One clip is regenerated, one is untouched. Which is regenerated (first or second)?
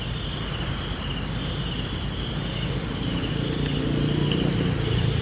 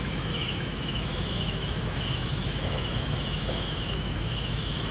second